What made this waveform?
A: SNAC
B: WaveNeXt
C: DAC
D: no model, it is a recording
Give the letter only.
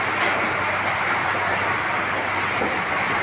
D